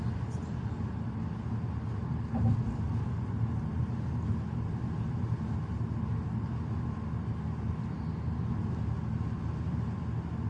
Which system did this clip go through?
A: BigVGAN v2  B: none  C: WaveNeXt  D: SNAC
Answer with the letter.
B